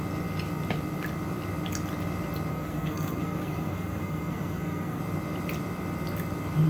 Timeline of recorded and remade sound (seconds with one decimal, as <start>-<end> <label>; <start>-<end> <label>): 0.0-2.5 recorded; 2.5-5.0 remade; 5.0-6.7 recorded